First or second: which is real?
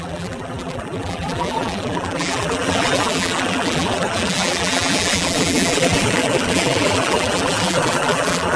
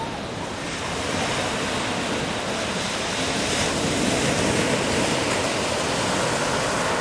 second